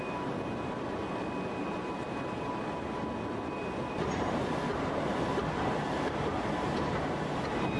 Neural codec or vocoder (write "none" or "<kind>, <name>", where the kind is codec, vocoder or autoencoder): vocoder, BigVGAN v2